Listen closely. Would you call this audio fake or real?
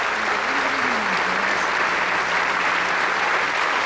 real